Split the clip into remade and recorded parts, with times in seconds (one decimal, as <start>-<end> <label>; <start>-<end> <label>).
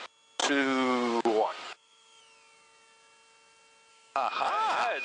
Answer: 0.0-0.4 recorded; 0.4-2.2 remade; 2.2-3.9 recorded; 3.9-4.5 remade; 4.5-5.0 recorded